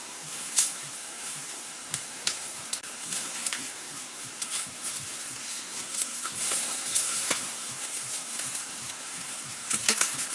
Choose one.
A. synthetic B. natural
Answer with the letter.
A